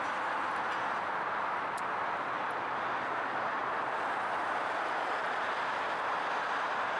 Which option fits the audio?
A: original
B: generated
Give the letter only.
A